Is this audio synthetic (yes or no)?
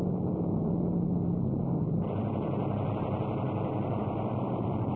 no